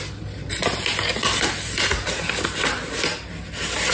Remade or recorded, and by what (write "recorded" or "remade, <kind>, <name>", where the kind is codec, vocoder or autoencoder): recorded